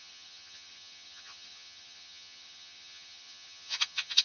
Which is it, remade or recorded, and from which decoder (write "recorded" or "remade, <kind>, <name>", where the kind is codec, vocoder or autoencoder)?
remade, vocoder, HiFi-GAN